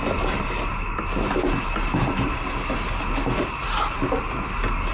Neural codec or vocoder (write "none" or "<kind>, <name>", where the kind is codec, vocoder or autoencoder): none